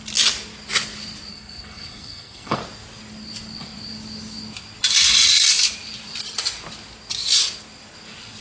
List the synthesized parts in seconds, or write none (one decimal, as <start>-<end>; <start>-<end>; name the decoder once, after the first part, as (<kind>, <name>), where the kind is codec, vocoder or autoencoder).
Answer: 1.3-2.6 (codec, SNAC)